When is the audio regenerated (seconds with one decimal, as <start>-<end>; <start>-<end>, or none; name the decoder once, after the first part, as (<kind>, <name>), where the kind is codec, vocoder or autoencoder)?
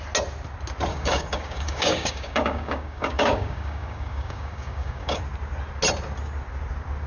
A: 0.9-5.2 (codec, DAC)